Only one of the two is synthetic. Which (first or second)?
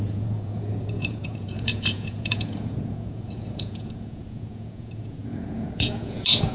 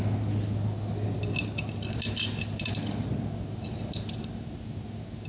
first